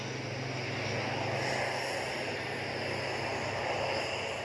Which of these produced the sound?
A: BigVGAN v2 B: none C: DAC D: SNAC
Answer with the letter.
B